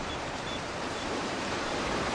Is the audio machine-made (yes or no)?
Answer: yes